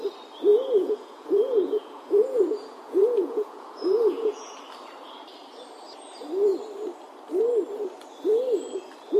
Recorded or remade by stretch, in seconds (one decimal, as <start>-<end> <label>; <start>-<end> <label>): 0.0-0.5 recorded; 0.5-4.6 remade; 4.6-9.2 recorded